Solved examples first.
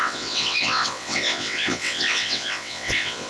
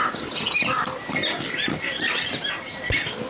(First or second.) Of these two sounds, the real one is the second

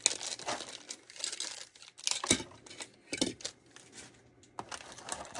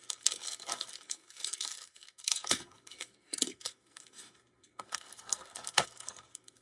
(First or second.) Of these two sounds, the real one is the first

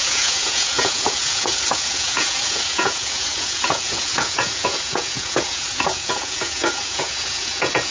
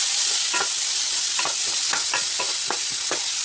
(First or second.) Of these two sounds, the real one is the second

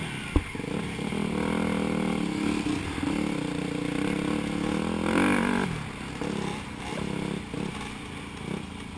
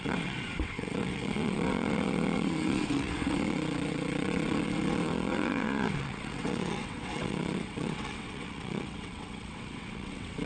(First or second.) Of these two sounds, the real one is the first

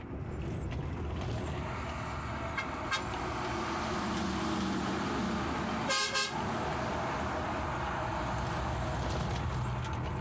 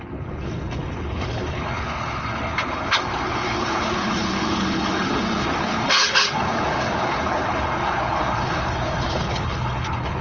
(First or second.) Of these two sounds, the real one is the first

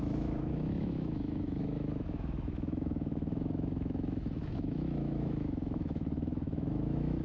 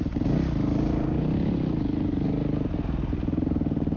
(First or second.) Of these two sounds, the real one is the second